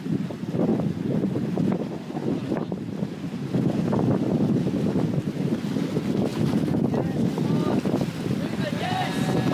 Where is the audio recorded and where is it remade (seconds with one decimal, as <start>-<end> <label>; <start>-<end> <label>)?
0.0-0.7 recorded; 0.7-2.0 remade; 2.0-9.5 recorded